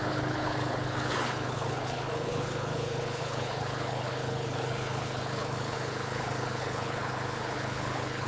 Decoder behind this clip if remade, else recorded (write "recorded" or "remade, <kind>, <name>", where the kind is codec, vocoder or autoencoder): remade, codec, HILCodec